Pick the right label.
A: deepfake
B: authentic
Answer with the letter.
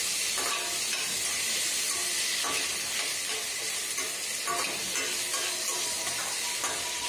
B